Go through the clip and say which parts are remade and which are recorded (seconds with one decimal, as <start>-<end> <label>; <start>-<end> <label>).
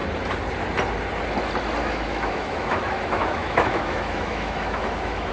0.0-1.8 recorded; 1.8-5.3 remade